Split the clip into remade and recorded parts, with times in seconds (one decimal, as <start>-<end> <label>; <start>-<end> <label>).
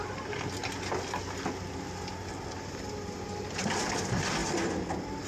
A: 0.0-5.3 recorded